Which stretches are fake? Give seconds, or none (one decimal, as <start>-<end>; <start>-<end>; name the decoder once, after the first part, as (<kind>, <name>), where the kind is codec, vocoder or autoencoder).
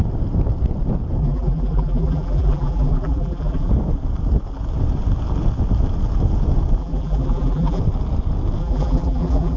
1.2-3.7 (vocoder, BigVGAN v2); 6.8-7.8; 8.6-9.6